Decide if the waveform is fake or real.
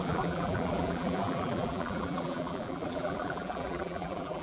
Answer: fake